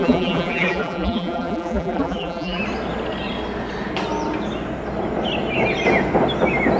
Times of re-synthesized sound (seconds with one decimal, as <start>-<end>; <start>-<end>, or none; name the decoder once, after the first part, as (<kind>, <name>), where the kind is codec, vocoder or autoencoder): 0.0-2.6 (vocoder, BigVGAN v2)